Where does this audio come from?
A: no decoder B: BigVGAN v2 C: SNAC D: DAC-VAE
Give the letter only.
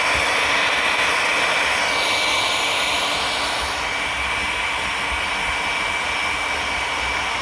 A